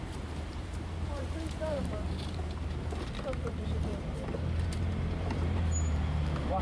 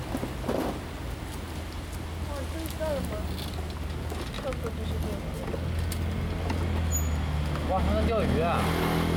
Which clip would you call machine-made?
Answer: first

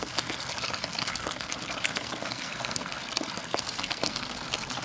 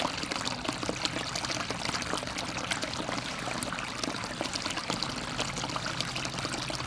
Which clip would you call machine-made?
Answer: first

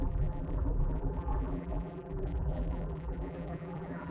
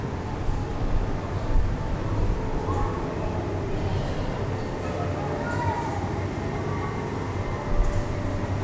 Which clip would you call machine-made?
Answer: first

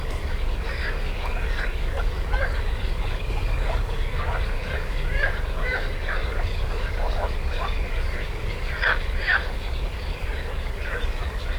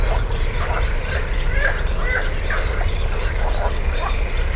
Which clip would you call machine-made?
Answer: first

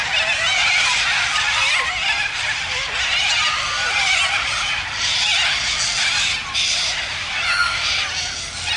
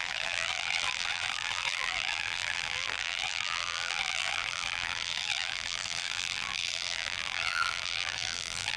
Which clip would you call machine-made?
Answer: second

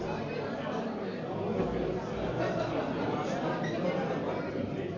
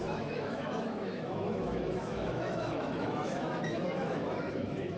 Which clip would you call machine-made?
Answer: second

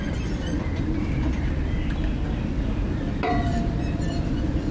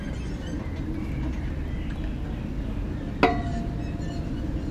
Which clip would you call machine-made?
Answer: first